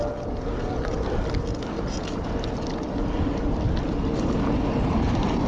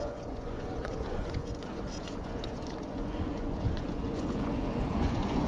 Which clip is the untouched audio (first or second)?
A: first